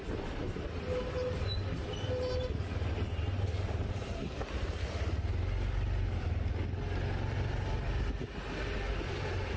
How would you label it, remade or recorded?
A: recorded